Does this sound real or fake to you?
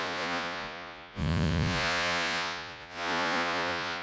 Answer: fake